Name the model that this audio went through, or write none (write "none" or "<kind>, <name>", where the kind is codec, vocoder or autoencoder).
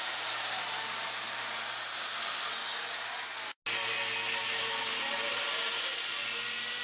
none